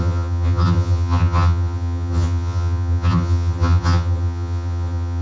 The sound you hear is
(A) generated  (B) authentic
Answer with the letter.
A